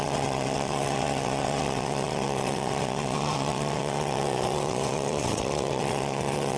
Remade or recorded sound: remade